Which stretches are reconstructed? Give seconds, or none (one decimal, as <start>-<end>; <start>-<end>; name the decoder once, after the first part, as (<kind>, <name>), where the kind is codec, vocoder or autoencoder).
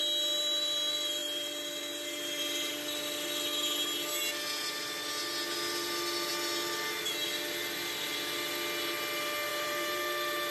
1.2-2.7 (vocoder, BigVGAN v2); 9.5-10.5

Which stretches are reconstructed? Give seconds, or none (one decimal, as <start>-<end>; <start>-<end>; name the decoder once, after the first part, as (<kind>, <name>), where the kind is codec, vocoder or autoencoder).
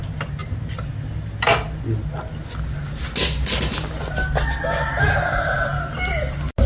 none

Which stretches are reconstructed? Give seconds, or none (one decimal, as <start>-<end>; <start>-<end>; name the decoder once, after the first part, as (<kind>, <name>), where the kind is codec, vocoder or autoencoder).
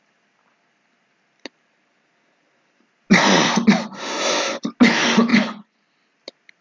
5.3-5.9 (vocoder, Vocos)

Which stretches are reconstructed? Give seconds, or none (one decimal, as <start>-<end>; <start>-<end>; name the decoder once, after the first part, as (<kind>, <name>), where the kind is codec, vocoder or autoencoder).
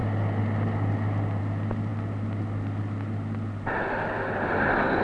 none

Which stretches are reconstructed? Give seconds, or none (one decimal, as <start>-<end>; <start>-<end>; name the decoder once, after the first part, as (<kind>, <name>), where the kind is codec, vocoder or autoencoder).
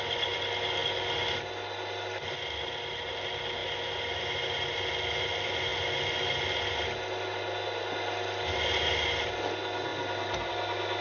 none